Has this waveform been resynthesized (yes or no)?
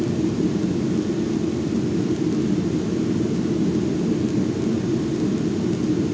no